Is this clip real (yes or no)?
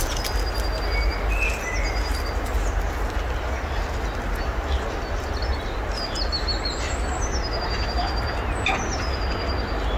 yes